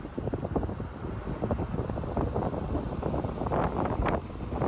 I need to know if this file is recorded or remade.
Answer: recorded